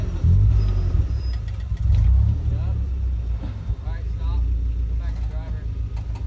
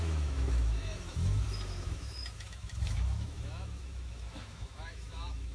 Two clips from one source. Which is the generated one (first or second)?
second